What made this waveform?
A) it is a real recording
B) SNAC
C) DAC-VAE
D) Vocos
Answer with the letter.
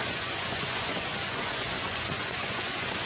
D